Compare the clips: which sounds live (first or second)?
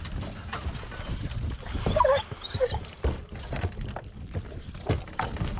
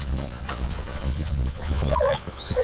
first